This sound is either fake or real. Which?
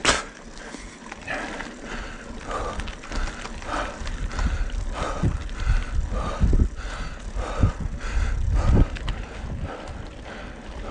real